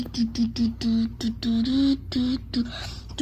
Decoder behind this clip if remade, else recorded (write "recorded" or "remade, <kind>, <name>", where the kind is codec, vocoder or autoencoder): recorded